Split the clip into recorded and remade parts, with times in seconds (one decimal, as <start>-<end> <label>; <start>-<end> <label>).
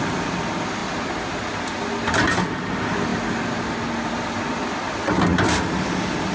0.0-6.3 recorded